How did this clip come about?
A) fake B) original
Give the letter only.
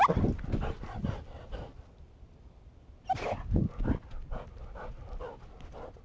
B